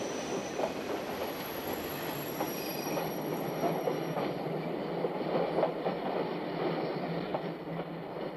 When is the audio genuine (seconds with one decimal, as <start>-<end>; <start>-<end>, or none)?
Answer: 0.0-8.4